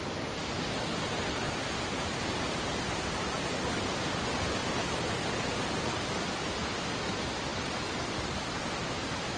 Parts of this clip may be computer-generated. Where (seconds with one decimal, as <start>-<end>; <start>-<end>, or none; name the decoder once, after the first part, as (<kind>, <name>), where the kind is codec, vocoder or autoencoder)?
none